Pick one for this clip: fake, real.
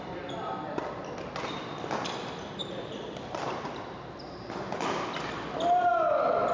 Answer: real